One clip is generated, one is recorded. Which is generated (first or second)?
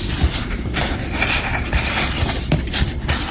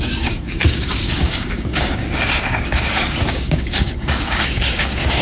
second